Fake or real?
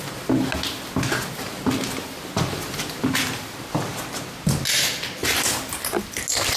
real